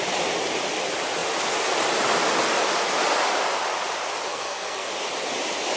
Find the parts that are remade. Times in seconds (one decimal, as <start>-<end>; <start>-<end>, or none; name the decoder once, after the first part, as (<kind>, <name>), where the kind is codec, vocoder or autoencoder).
4.3-4.9 (codec, SNAC)